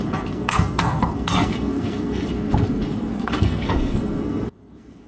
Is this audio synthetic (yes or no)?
yes